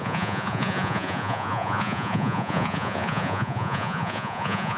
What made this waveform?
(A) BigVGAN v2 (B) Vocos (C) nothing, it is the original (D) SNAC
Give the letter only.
B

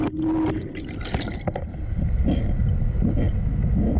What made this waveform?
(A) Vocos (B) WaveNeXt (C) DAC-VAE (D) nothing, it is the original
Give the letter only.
D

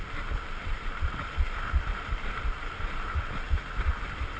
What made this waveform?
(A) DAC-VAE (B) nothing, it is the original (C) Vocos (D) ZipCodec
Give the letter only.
B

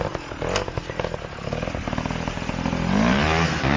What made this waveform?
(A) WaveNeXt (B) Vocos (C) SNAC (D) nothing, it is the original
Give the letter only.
D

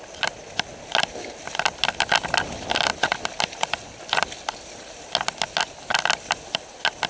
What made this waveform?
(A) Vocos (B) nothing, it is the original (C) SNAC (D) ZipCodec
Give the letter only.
B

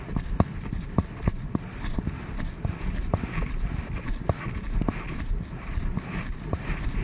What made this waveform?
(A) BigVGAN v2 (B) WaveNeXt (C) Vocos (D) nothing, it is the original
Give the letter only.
D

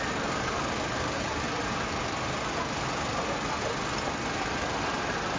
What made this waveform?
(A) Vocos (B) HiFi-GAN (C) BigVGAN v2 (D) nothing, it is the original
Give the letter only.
D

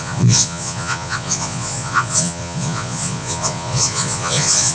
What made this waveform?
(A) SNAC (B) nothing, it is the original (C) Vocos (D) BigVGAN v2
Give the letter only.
C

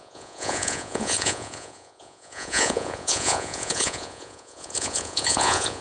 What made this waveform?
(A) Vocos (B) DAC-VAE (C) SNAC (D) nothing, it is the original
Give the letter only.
A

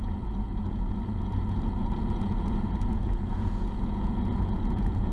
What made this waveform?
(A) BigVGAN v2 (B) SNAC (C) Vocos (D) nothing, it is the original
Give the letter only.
C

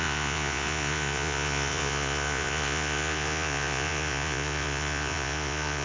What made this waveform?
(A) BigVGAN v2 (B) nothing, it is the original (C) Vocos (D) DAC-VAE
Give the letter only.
C